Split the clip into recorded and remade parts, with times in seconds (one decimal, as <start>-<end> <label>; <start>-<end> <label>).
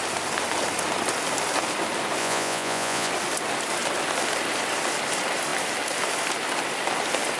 0.0-2.2 recorded; 2.2-3.1 remade; 3.1-7.4 recorded